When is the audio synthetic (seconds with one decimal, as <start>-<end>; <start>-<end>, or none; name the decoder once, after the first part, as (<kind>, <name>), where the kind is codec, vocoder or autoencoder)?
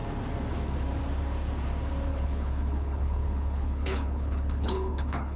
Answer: 2.1-5.4 (codec, HILCodec)